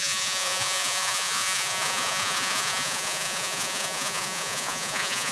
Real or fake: fake